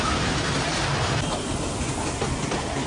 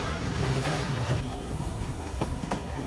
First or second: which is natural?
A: first